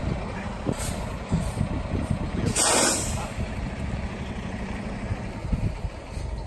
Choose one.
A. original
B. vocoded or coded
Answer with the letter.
A